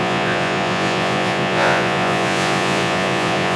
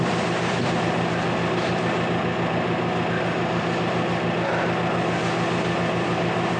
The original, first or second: second